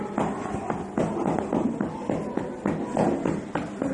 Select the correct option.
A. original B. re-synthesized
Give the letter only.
A